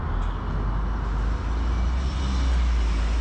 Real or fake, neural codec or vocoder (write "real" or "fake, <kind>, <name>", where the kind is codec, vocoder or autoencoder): real